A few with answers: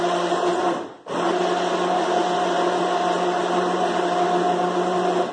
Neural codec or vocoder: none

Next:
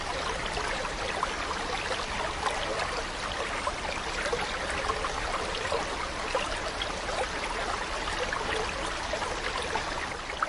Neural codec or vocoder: none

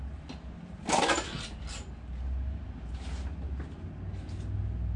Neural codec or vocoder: none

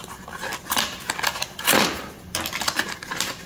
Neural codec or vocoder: none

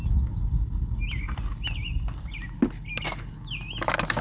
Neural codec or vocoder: none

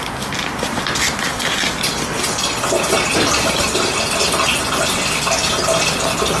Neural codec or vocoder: none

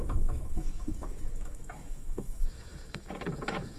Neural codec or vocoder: autoencoder, DAC-VAE